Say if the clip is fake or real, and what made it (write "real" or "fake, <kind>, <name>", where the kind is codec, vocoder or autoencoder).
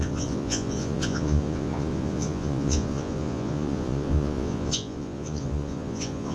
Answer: fake, vocoder, Vocos